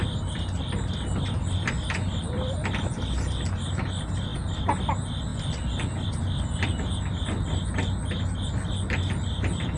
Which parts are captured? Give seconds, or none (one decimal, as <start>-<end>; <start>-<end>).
0.0-9.8